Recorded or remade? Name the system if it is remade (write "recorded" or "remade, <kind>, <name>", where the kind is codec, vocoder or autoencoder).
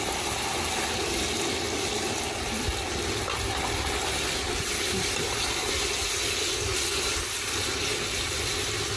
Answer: recorded